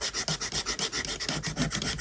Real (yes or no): yes